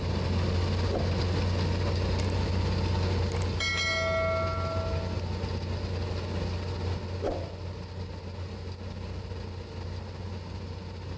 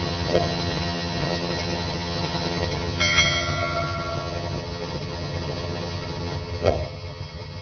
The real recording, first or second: first